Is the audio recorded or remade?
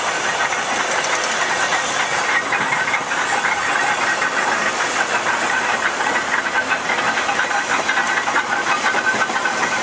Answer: recorded